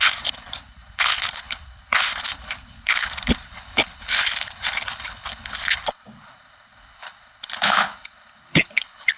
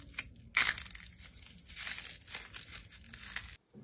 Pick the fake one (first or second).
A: first